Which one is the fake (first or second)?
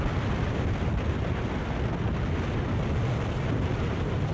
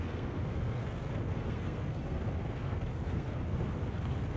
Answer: second